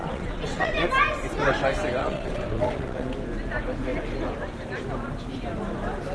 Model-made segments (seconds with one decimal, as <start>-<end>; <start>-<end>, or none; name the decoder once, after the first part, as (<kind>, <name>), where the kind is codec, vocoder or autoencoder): 0.0-0.9 (vocoder, WaveNeXt); 2.0-3.1